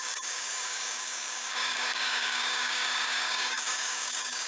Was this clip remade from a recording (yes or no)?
yes